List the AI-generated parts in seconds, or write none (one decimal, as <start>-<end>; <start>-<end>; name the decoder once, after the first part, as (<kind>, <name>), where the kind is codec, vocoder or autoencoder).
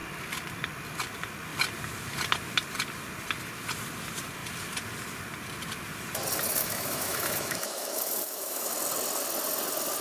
6.6-8.7 (autoencoder, DAC-VAE)